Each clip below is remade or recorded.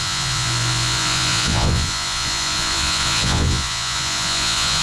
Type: remade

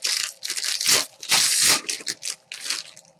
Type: recorded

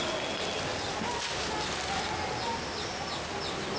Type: recorded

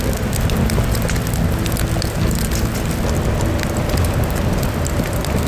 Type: recorded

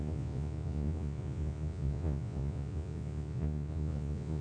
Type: remade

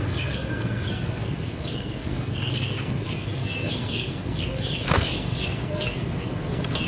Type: remade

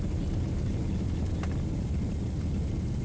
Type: remade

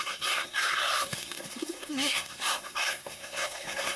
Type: remade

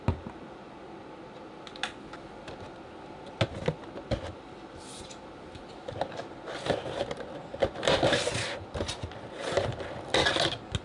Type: recorded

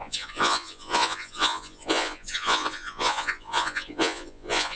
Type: remade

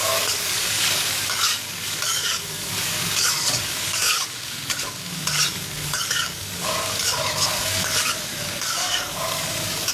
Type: remade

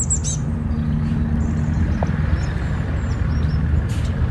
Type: recorded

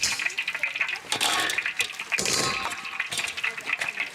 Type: recorded